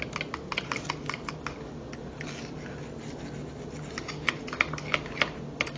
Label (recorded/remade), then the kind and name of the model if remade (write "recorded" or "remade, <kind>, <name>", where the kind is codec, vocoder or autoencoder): recorded